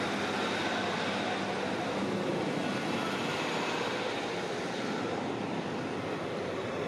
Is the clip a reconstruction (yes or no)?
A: no